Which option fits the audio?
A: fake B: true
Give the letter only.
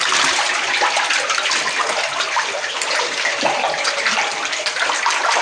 B